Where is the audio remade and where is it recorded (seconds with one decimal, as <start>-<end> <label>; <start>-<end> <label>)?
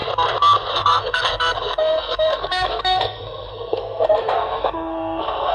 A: 0.0-0.7 recorded; 0.7-5.5 remade